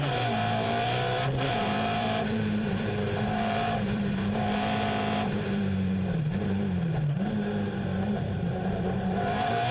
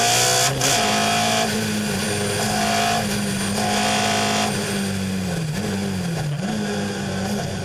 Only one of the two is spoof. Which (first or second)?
first